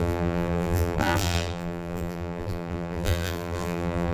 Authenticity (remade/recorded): remade